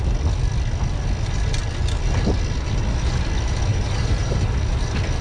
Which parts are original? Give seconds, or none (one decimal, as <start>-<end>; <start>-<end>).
0.0-3.7; 4.5-5.2